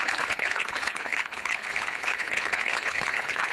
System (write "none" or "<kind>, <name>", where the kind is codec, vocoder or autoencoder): codec, HILCodec